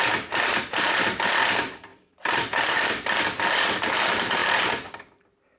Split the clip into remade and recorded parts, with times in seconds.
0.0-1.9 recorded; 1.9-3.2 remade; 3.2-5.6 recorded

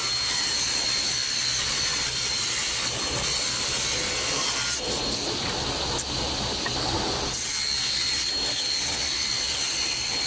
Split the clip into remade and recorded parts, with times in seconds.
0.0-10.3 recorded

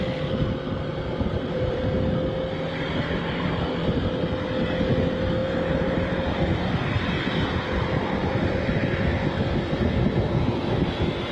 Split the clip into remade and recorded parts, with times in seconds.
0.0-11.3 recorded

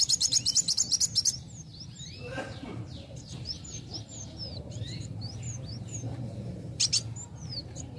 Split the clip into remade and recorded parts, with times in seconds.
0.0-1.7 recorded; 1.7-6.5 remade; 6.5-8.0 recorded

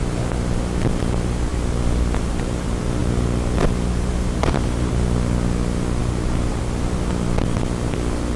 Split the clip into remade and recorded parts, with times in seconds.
0.0-3.0 recorded; 3.0-4.9 remade; 4.9-6.0 recorded; 6.0-6.6 remade; 6.6-8.4 recorded

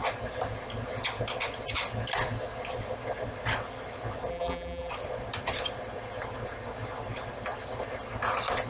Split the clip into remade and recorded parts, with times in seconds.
0.0-4.3 recorded; 4.3-4.9 remade; 4.9-8.7 recorded